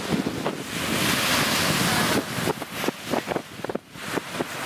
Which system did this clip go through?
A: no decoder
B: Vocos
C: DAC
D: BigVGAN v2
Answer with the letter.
A